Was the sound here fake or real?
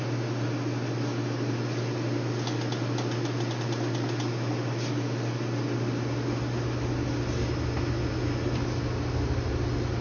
real